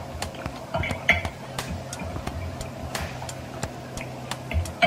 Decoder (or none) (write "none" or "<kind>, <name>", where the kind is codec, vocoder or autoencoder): none